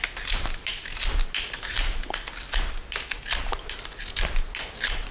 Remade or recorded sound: recorded